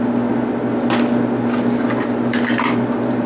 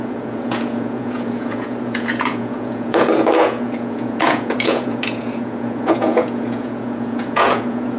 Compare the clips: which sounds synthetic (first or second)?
second